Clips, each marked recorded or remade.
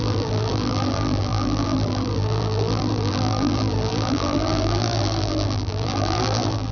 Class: remade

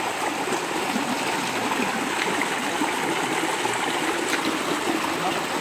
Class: recorded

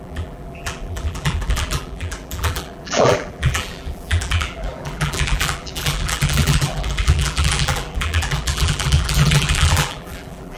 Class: remade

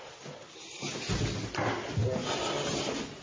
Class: recorded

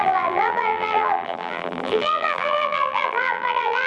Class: remade